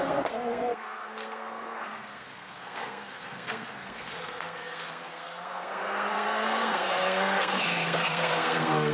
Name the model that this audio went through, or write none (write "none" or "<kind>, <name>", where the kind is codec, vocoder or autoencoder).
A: codec, SNAC